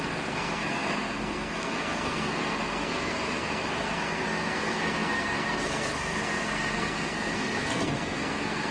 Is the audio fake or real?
fake